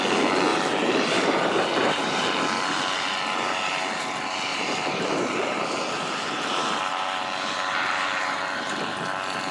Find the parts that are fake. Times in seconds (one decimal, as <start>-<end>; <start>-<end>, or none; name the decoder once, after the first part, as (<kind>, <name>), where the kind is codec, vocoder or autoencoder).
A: 0.5-2.2 (vocoder, BigVGAN v2); 4.5-8.9